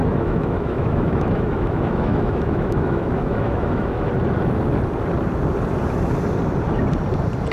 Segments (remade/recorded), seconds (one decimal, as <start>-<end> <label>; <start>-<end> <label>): 0.0-4.1 remade; 4.1-7.5 recorded